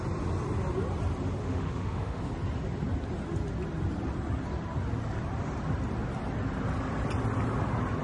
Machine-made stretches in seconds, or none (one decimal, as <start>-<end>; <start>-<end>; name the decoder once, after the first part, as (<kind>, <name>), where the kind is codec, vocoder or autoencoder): 1.4-2.2 (autoencoder, DAC-VAE)